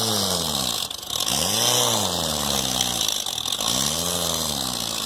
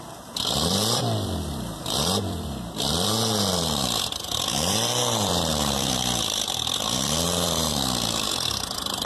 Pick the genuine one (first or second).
first